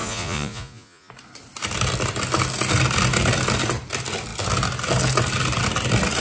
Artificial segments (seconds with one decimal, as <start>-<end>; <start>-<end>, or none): 0.0-1.1

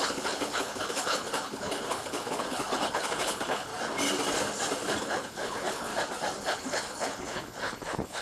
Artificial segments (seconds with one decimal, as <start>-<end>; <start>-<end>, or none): 0.0-3.7; 5.0-5.9; 6.4-8.2

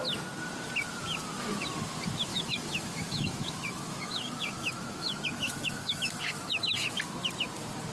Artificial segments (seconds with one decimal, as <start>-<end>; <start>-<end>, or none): 2.3-7.0

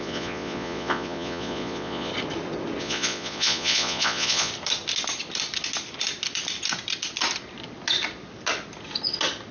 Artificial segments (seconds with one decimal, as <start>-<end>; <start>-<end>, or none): 0.0-2.1; 2.8-4.5

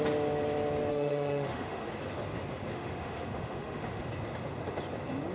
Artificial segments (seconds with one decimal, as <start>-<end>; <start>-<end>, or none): 0.9-1.9; 2.7-4.0

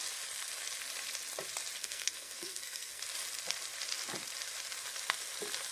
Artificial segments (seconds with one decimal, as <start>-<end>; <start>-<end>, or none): 1.8-3.0